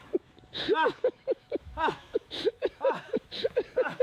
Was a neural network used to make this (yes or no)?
yes